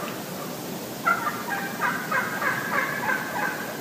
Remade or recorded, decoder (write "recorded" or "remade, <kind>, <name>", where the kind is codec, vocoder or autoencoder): recorded